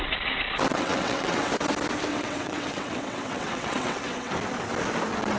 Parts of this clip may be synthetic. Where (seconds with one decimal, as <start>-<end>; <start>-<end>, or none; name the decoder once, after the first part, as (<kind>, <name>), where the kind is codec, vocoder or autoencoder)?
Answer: 0.7-1.5 (vocoder, WaveNeXt); 2.1-4.3